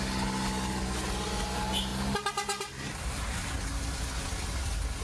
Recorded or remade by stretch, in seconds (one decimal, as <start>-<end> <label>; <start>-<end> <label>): 0.0-5.0 recorded